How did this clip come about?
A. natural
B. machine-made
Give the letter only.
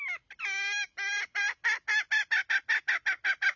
A